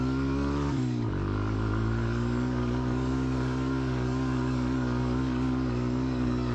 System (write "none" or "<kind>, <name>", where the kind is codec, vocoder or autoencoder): codec, DAC